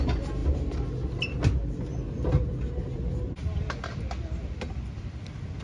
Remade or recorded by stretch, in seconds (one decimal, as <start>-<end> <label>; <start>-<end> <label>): 0.0-5.6 recorded